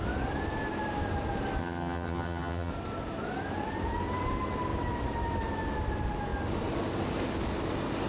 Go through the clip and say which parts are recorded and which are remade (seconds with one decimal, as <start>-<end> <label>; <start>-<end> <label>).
0.0-1.6 recorded; 1.6-2.7 remade; 2.7-8.1 recorded